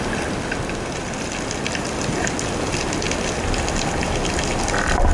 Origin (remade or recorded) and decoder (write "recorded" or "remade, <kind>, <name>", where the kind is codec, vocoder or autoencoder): recorded